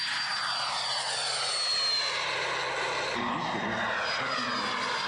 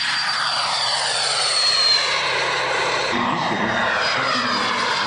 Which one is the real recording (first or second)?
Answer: first